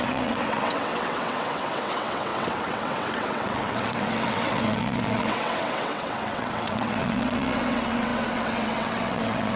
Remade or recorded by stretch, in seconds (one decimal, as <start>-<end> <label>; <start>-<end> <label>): 0.0-9.6 remade